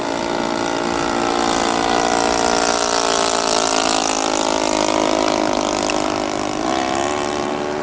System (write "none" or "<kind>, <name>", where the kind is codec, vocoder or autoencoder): none